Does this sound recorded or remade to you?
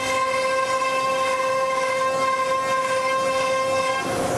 recorded